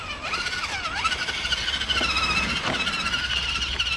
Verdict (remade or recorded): recorded